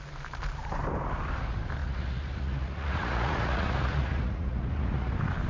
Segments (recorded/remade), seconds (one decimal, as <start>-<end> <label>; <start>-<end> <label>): 0.0-1.8 recorded; 1.8-5.1 remade; 5.1-5.5 recorded

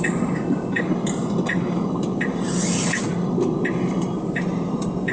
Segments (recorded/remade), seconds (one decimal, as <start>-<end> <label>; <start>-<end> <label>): 0.0-0.9 remade; 0.9-4.0 recorded; 4.0-5.1 remade

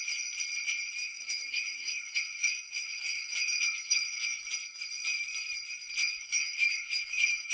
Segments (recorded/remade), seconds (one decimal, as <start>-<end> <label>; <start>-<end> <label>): 0.0-1.0 recorded; 1.0-4.4 remade; 4.4-6.0 recorded; 6.0-7.5 remade

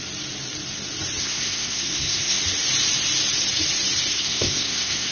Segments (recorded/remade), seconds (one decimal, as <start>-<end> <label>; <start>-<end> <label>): 0.0-1.2 recorded; 1.2-2.4 remade; 2.4-4.1 recorded; 4.1-5.1 remade

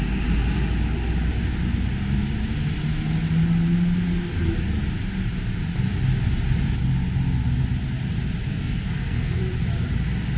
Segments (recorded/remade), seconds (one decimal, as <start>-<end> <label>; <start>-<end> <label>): 0.0-8.5 recorded; 8.5-9.4 remade; 9.4-10.4 recorded

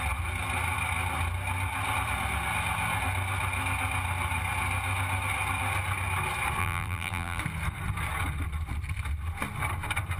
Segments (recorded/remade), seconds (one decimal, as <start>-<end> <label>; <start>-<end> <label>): 0.0-6.6 recorded; 6.6-7.4 remade; 7.4-10.2 recorded